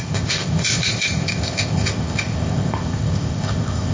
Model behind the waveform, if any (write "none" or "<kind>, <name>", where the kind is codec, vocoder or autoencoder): codec, ZipCodec